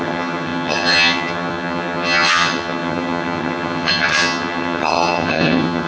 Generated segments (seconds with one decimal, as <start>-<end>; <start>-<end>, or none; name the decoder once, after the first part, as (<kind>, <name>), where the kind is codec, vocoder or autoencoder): 0.0-5.9 (vocoder, HiFi-GAN)